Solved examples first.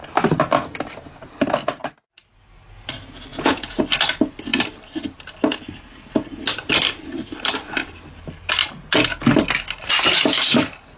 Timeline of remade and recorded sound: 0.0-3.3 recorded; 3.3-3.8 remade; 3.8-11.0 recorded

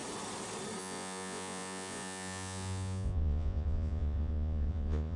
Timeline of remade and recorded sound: 0.0-0.8 recorded; 0.8-5.2 remade

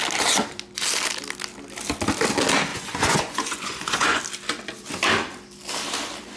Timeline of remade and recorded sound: 0.0-2.7 recorded; 2.7-4.2 remade; 4.2-6.4 recorded